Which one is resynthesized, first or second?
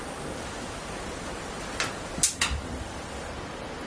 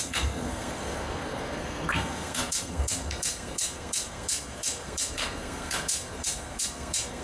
second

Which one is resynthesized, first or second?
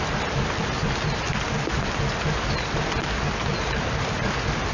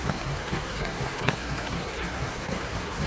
second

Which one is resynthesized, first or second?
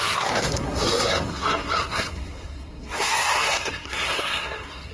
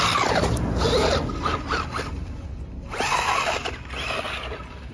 first